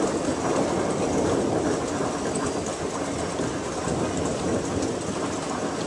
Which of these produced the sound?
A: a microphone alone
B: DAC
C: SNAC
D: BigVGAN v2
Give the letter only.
A